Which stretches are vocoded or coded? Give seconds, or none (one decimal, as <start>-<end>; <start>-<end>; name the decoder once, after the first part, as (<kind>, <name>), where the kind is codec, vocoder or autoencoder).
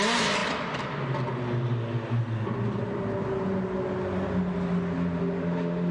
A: none